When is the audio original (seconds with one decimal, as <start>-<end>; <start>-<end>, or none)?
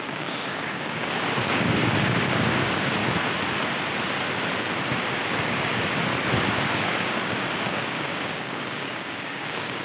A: 3.0-5.0; 6.1-6.7